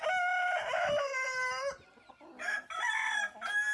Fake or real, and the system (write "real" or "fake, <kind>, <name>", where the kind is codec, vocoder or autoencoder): real